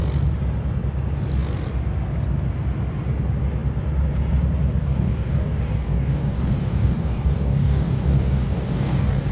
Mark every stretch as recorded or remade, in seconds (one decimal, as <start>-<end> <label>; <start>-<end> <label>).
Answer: 0.0-4.8 recorded; 4.8-9.3 remade